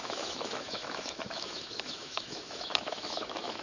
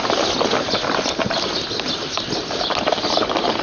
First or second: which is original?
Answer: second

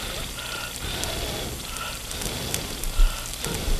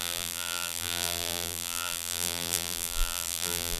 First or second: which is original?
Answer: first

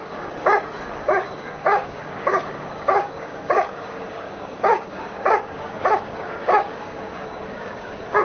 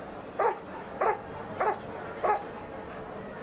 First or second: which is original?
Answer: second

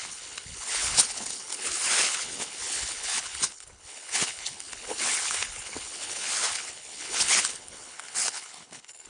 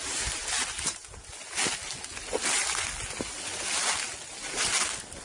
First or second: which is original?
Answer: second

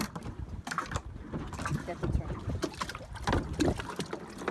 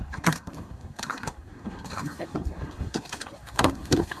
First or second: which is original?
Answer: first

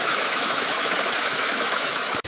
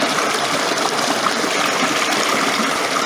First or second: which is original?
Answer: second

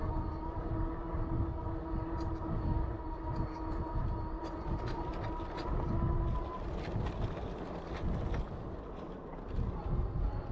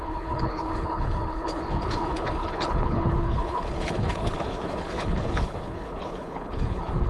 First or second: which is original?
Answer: first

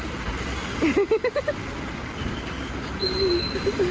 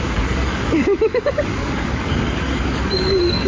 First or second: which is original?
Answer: first